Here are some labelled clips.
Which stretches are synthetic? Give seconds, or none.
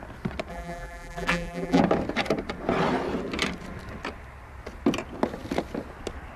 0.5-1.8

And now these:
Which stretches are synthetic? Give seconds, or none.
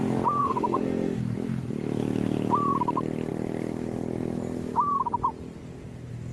0.4-1.2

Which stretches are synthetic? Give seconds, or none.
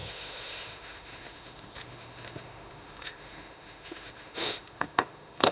0.0-5.5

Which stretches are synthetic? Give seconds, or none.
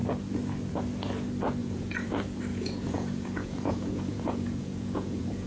1.6-2.1; 2.5-5.5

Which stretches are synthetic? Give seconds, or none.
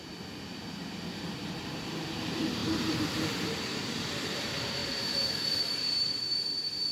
0.0-6.9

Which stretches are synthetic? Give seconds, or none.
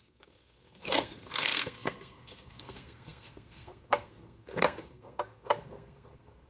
0.0-6.5